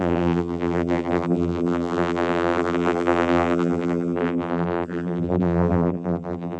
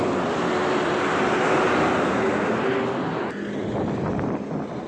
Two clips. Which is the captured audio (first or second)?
second